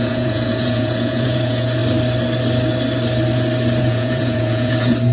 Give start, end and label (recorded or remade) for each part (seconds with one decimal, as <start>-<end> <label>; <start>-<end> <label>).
0.0-1.8 remade; 1.8-3.8 recorded; 3.8-5.1 remade